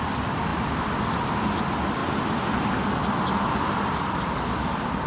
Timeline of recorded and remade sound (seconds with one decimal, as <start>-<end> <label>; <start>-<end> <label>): 0.0-5.1 recorded